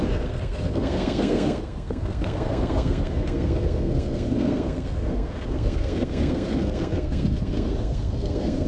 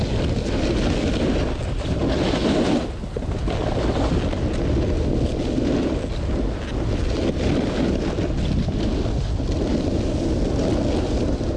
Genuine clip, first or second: second